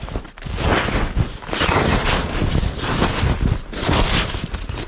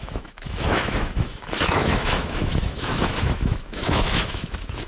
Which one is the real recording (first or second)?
first